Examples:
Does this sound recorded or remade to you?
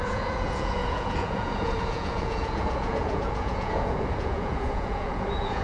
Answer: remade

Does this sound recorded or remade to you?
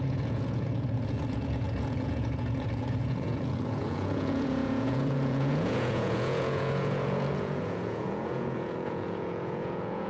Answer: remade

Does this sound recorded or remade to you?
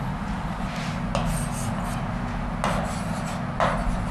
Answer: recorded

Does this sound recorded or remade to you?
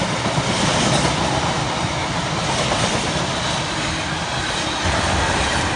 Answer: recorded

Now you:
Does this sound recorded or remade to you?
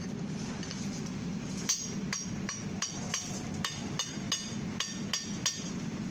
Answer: recorded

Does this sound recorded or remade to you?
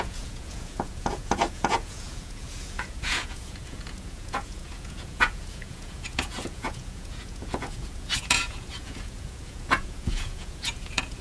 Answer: remade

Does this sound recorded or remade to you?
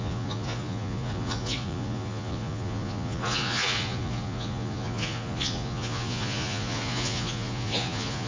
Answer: remade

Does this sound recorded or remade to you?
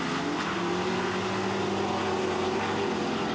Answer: recorded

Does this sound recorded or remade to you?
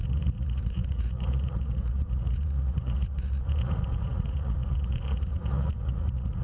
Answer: remade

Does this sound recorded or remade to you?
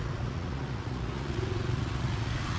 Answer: remade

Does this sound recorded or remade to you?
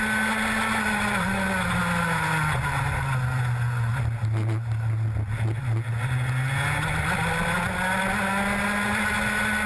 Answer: recorded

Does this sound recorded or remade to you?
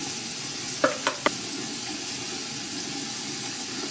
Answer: recorded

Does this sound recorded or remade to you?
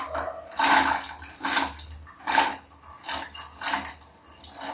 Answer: recorded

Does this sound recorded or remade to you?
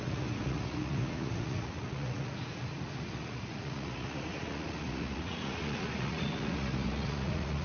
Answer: remade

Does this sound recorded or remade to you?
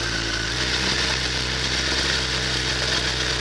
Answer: recorded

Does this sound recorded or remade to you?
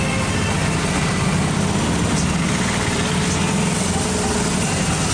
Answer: recorded